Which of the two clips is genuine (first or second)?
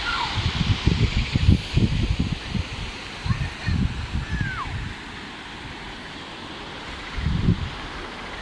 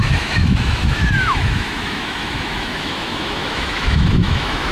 first